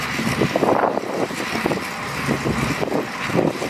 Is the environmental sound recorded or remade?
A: recorded